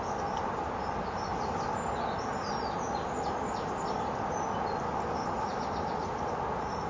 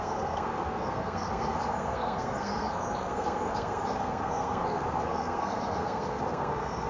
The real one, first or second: first